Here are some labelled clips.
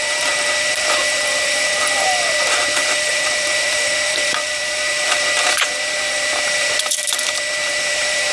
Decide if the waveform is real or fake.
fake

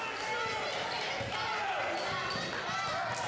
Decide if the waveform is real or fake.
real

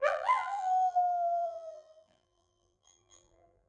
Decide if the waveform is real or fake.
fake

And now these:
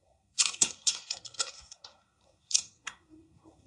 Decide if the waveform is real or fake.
fake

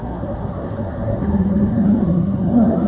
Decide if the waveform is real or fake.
fake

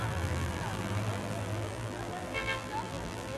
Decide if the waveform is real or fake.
fake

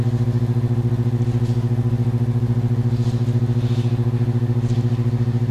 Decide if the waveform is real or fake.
real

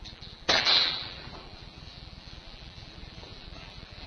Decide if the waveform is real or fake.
fake